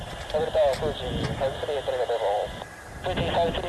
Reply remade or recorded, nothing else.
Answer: recorded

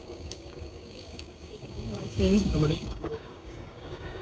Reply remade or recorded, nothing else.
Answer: remade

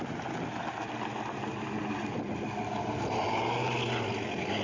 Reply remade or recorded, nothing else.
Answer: recorded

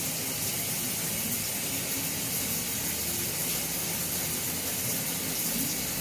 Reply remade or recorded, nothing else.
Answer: recorded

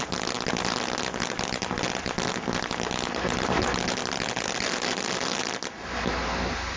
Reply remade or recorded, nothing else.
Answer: recorded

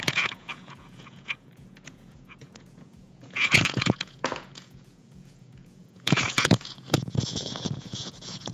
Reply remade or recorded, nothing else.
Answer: remade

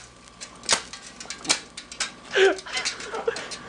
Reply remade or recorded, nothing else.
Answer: recorded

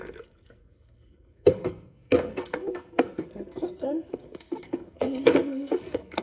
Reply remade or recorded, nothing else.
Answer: remade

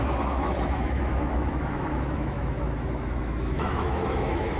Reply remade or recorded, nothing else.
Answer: remade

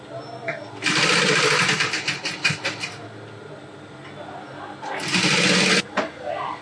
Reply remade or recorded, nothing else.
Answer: recorded